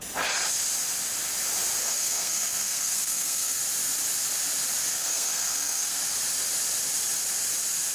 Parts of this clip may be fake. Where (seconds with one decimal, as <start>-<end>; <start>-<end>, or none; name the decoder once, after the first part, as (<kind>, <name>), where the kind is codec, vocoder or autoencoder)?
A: 1.8-3.6 (codec, SNAC); 4.9-6.0